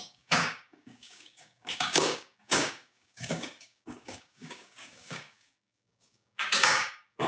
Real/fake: fake